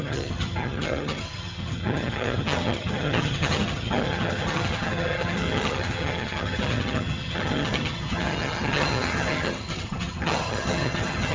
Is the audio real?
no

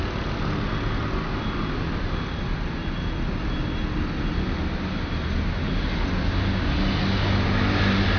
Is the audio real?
yes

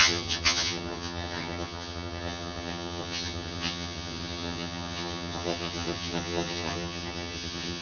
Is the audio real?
no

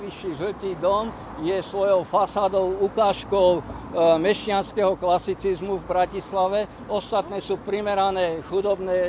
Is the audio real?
yes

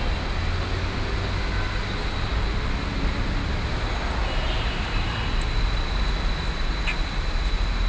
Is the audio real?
yes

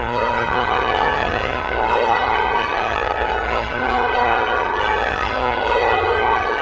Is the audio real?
no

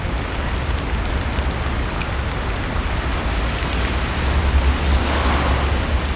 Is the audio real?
yes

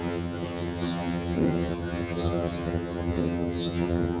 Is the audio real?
no